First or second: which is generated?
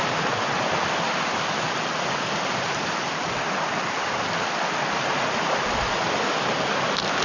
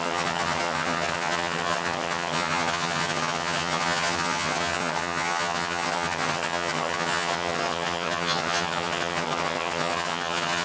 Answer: second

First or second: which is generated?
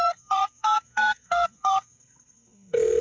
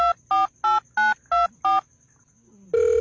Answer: first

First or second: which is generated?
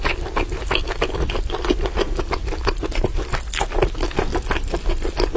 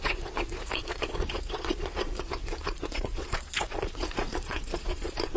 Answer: second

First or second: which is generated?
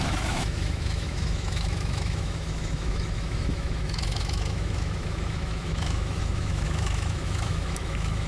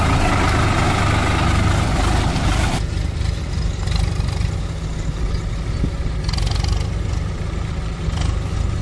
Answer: first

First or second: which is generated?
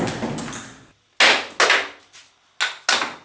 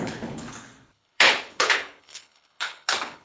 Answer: second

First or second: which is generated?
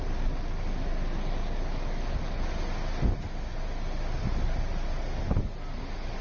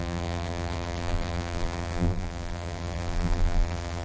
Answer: second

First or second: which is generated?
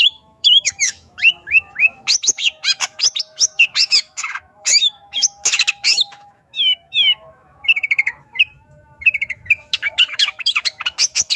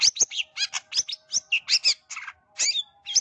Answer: first